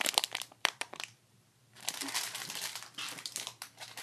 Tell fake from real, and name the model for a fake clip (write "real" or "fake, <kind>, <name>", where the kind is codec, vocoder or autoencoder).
fake, vocoder, BigVGAN v2